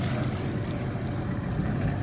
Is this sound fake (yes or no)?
no